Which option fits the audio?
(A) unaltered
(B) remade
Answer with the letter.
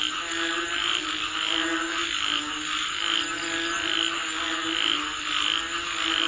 A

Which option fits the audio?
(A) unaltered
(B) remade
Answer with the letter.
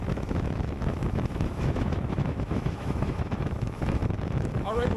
B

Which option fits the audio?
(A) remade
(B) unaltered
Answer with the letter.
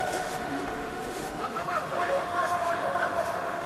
A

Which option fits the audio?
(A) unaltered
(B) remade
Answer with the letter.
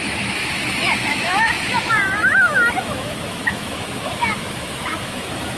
B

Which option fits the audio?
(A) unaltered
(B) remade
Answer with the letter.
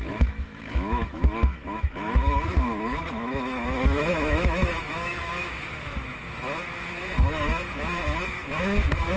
B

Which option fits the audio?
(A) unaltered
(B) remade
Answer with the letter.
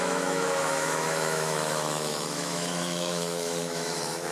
B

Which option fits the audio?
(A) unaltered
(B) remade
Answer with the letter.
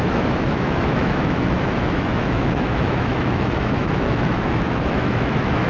B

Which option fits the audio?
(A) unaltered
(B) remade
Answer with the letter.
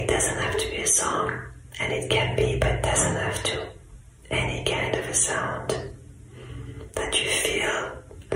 A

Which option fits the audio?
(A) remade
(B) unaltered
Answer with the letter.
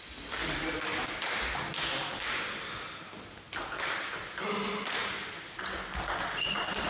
B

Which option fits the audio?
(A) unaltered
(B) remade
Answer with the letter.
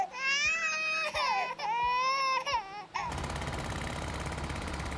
A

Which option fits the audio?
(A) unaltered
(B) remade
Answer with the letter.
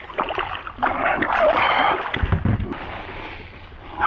A